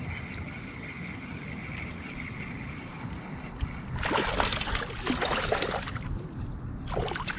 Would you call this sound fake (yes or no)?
no